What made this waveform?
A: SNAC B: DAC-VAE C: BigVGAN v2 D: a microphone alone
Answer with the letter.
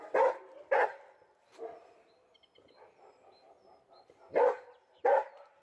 D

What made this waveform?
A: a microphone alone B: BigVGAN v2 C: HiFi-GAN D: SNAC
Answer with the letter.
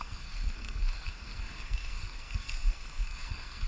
D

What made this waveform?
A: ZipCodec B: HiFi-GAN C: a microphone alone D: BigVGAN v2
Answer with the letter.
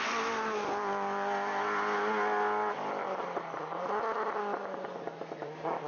C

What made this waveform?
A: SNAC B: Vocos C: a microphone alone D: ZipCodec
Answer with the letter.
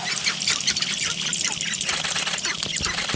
C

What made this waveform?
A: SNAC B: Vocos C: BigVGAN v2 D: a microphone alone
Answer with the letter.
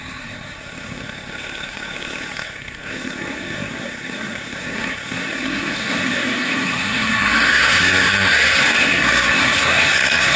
A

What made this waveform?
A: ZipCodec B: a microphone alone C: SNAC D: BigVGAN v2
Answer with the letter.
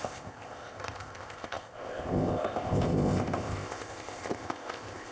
A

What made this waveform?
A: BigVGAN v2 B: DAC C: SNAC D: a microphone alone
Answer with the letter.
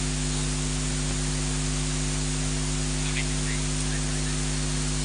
D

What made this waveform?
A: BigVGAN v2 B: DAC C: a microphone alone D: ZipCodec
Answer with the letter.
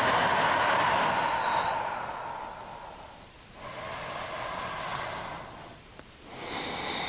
C